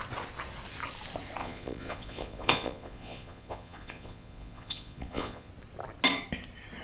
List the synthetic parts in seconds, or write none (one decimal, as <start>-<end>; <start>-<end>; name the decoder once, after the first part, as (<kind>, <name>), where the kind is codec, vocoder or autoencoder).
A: 1.4-5.5 (vocoder, Vocos)